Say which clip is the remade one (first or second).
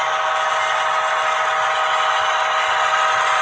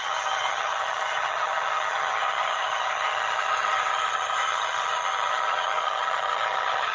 second